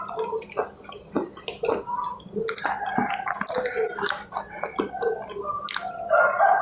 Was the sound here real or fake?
real